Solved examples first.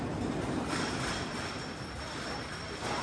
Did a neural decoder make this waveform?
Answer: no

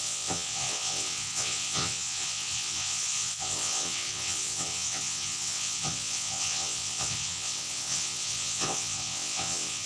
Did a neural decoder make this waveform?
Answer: yes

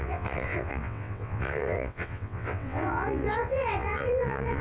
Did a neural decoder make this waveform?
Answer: yes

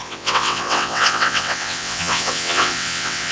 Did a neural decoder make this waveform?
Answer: yes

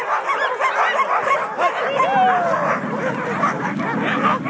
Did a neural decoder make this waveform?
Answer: no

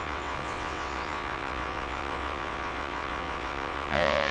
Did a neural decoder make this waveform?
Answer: yes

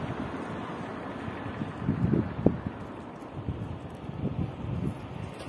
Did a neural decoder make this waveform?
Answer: no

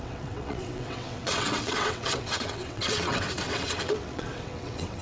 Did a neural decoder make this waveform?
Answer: yes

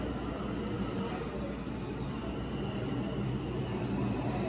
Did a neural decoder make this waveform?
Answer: no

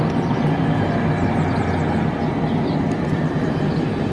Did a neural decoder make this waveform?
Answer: no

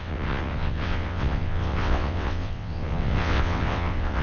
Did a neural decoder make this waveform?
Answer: yes